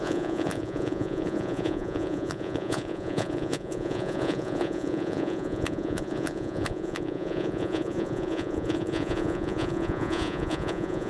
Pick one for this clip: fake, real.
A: fake